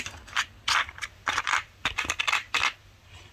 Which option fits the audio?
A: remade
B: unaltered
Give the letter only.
A